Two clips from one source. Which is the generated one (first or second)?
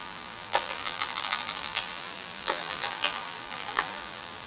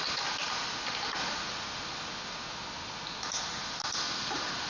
first